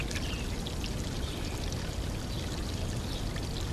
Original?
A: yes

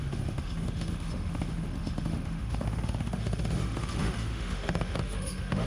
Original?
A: no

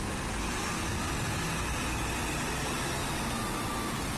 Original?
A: yes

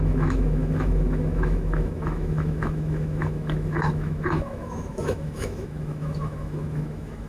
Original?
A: no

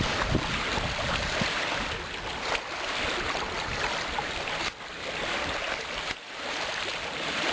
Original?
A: yes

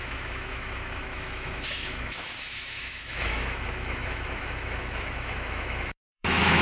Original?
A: no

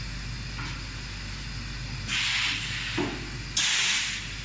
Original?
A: yes